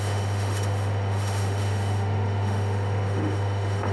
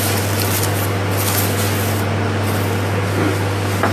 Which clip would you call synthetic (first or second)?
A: first